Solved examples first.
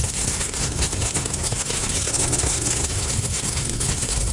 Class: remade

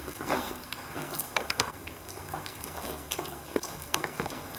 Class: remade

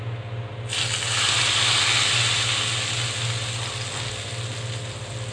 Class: recorded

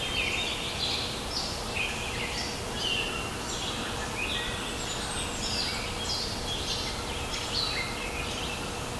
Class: recorded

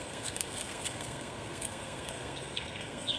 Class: remade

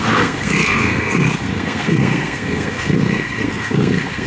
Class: remade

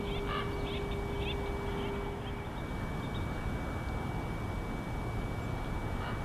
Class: recorded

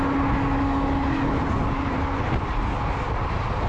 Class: recorded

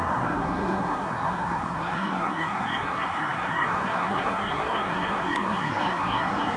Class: remade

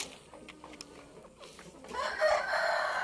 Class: recorded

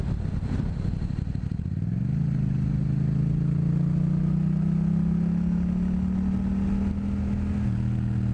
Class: recorded